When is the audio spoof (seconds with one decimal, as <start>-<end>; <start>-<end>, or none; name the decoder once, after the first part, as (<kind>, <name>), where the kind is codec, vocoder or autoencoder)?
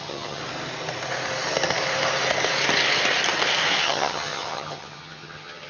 0.0-0.4 (vocoder, HiFi-GAN); 3.8-5.7